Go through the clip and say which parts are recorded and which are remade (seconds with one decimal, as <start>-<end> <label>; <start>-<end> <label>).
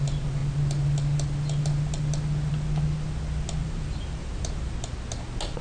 0.0-3.6 recorded; 3.6-4.7 remade; 4.7-5.6 recorded